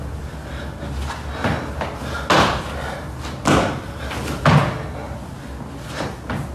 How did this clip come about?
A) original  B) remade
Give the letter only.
A